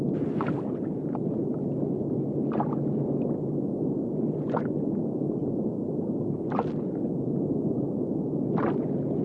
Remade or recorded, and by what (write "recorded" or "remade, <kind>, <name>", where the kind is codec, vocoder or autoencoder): recorded